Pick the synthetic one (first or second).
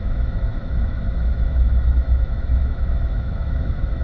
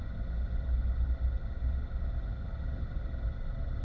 first